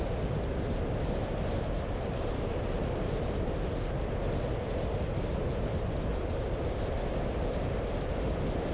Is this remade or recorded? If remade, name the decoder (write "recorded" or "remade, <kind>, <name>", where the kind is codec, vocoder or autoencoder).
recorded